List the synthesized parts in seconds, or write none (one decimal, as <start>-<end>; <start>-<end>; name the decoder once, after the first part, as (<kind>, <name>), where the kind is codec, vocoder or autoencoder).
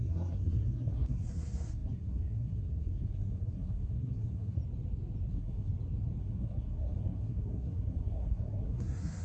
0.0-4.6 (codec, SNAC); 5.3-5.7; 6.2-9.2